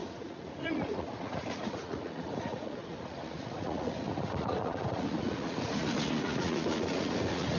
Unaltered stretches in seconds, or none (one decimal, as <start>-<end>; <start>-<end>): none